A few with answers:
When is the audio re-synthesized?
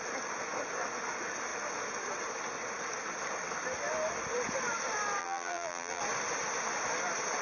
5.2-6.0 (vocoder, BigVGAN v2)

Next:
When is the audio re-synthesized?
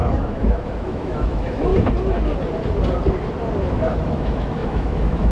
0.0-1.7 (autoencoder, DAC-VAE); 3.7-5.3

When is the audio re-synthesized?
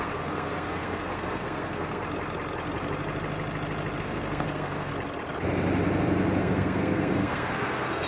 0.0-2.0 (codec, SNAC); 4.0-4.9; 6.4-8.1